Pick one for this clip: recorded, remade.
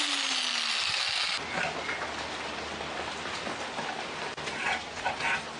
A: recorded